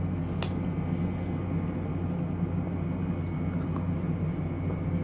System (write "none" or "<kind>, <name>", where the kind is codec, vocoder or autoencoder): none